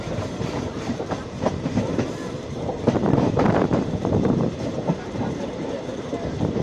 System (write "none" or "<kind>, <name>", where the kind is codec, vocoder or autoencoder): vocoder, BigVGAN v2